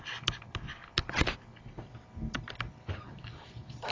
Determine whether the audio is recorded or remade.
recorded